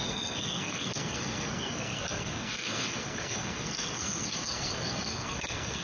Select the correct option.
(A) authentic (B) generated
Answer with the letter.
B